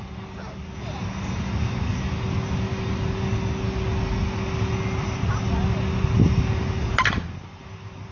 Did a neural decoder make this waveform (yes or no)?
no